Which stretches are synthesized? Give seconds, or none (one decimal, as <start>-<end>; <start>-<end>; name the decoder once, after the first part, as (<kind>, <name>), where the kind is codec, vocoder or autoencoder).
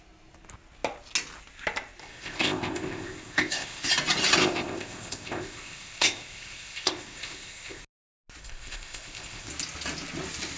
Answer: 2.0-3.9 (codec, ZipCodec); 4.4-7.8; 8.4-9.5